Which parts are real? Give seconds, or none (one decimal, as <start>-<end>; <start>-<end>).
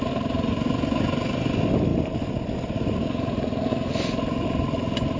0.0-5.2